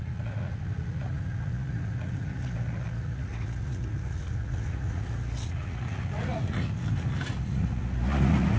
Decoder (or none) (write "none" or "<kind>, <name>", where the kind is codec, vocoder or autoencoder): vocoder, Vocos